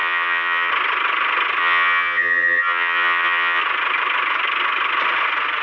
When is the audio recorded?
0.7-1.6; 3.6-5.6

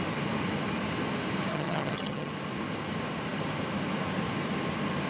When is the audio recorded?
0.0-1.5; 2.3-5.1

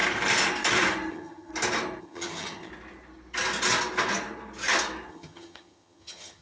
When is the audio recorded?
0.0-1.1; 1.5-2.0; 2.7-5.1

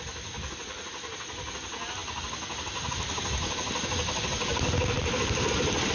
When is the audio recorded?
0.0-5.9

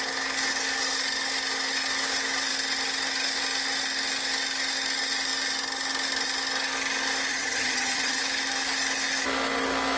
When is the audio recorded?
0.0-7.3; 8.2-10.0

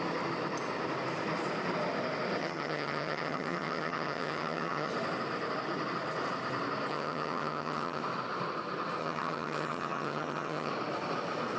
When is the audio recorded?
0.0-2.4; 4.9-6.9; 8.0-9.0; 10.7-11.6